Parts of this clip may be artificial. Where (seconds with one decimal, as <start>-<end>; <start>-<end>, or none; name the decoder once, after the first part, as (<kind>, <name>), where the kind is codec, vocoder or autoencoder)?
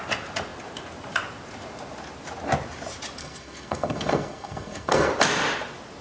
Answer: 3.2-5.1 (codec, SNAC)